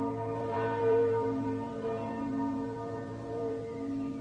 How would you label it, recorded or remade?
remade